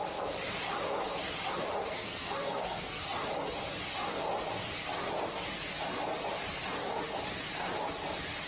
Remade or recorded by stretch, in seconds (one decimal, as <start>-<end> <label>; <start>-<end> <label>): 0.0-1.8 recorded; 1.8-3.0 remade; 3.0-8.5 recorded